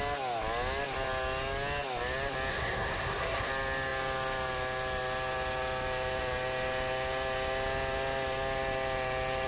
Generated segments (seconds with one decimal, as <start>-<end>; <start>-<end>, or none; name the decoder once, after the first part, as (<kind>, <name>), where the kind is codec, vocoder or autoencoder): 2.5-3.5 (codec, SNAC)